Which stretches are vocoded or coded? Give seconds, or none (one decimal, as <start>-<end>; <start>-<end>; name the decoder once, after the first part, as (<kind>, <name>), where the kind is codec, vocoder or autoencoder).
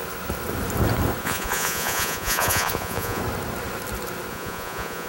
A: 1.2-3.2 (vocoder, Vocos); 4.3-5.1